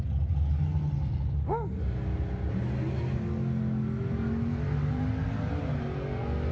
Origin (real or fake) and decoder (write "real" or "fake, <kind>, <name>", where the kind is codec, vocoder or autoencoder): real